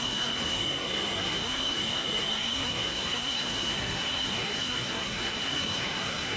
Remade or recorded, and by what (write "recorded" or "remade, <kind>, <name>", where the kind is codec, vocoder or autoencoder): remade, codec, SNAC